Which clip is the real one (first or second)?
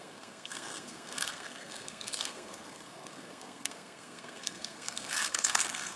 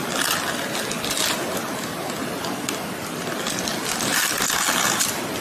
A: second